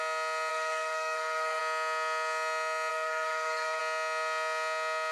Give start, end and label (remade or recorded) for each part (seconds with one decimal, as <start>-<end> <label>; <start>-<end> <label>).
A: 0.0-0.5 recorded; 0.5-1.6 remade; 1.6-2.9 recorded; 2.9-3.8 remade; 3.8-5.1 recorded